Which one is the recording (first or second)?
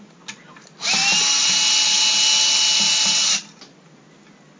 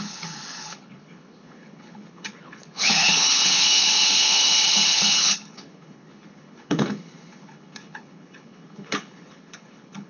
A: first